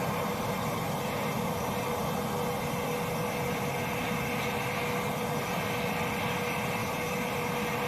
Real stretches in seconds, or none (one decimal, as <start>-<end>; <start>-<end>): 0.0-6.8; 7.4-7.9